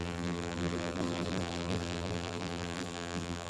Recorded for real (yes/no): no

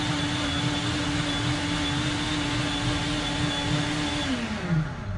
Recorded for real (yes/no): yes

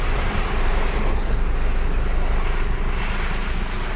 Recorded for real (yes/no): yes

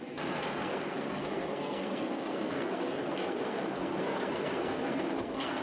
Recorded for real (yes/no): no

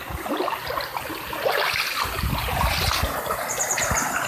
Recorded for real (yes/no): yes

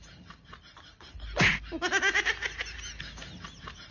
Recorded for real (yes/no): yes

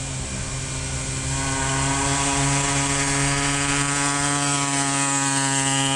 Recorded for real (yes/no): yes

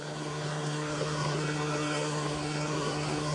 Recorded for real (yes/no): no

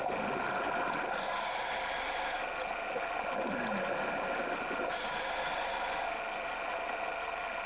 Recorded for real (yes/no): yes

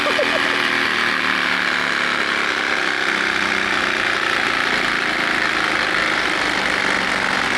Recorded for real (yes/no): yes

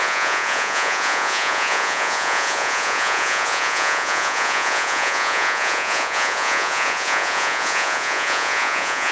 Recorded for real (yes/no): no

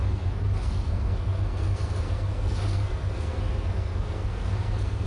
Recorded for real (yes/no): no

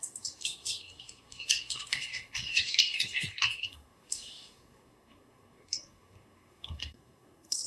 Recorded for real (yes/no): no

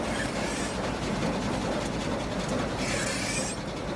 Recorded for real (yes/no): yes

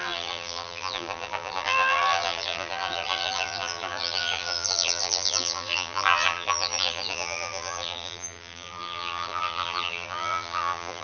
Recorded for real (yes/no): no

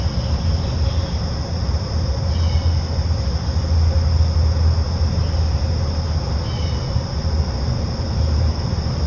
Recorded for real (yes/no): yes